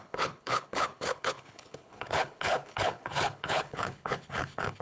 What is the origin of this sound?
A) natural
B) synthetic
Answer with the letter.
B